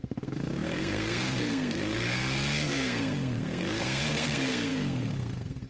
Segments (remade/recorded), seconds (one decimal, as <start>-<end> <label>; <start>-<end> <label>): 0.0-5.7 remade